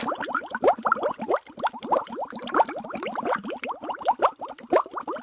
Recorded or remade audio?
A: recorded